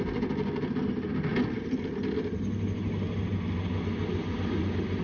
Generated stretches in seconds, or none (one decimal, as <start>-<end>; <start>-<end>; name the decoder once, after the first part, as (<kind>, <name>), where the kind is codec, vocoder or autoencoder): none